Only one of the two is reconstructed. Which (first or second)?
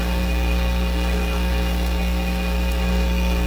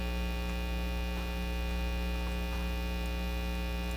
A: first